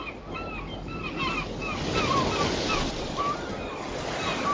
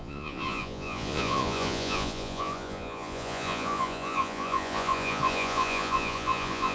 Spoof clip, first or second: second